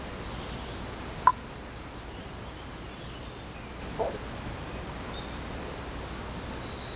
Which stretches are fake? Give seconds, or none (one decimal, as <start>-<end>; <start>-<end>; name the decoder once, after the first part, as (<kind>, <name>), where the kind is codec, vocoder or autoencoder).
none